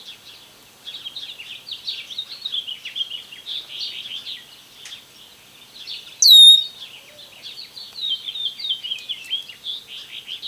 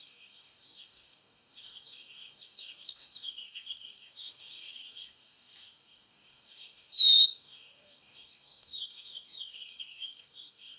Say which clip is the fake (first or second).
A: second